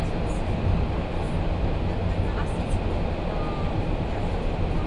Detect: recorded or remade recorded